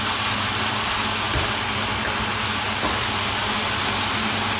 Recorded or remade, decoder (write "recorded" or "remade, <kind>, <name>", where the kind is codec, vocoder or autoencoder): recorded